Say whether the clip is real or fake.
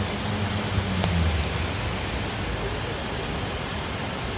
real